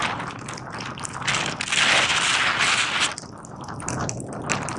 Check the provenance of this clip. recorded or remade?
recorded